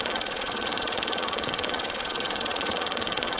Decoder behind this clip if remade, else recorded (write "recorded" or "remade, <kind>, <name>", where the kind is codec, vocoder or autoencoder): remade, vocoder, Vocos